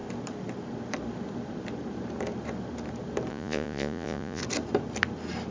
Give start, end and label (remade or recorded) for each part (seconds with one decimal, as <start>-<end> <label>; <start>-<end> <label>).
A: 0.0-3.3 recorded; 3.3-4.4 remade; 4.4-5.5 recorded